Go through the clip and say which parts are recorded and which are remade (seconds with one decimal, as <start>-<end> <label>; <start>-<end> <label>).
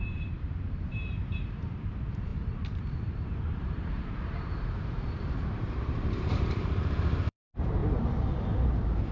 0.0-7.8 remade; 7.8-9.1 recorded